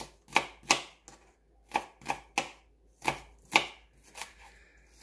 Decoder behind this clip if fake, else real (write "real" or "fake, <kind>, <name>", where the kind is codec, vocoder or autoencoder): real